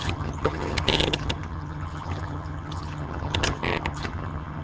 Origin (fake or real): fake